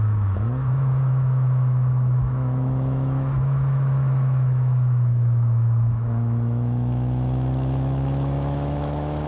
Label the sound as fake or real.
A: fake